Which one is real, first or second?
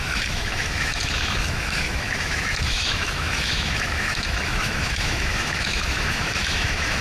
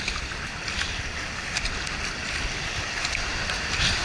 second